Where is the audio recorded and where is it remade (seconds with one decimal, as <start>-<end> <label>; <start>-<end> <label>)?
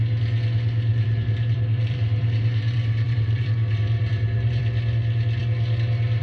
0.0-0.9 recorded; 0.9-4.6 remade; 4.6-6.2 recorded